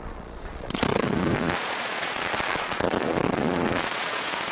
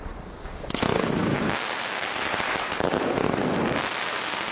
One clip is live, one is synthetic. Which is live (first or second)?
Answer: second